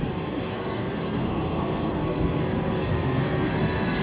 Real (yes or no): no